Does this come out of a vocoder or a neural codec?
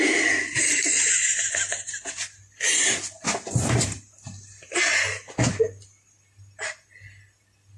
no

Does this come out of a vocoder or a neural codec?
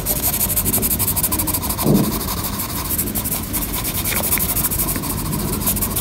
no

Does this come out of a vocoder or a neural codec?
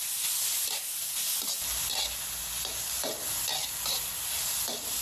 no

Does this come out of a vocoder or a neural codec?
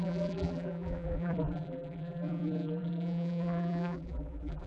yes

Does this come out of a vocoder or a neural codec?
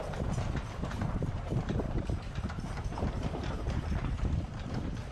yes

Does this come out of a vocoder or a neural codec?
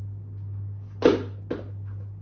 no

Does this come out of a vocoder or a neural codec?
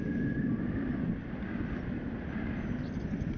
no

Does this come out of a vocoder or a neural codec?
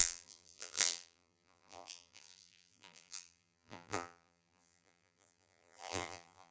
yes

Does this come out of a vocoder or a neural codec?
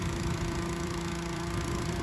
yes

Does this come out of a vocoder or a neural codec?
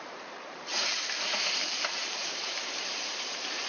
yes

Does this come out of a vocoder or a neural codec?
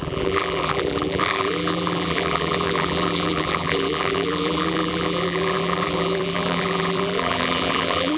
yes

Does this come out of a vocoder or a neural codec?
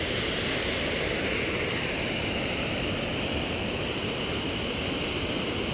no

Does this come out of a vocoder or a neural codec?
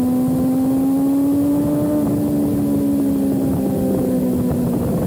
no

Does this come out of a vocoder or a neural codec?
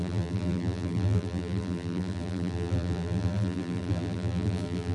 yes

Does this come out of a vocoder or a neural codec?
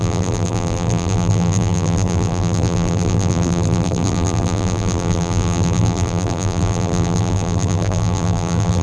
yes